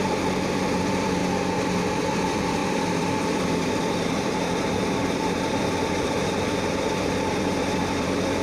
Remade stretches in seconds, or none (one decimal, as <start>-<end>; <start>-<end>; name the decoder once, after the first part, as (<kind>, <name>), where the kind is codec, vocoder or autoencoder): 0.0-1.2 (vocoder, BigVGAN v2); 2.2-8.4